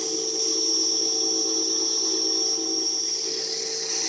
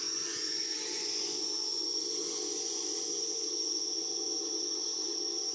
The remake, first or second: second